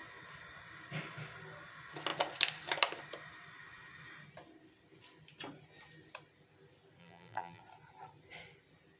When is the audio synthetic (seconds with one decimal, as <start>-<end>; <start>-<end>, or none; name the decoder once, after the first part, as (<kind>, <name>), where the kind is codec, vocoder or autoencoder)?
7.0-7.6 (vocoder, BigVGAN v2)